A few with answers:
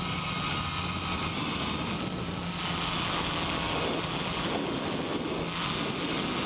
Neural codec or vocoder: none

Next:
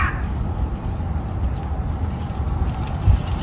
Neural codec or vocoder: none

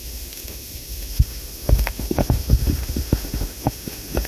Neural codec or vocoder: autoencoder, DAC-VAE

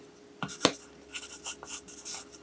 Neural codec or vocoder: none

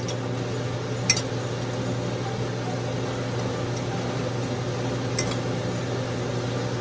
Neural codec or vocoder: none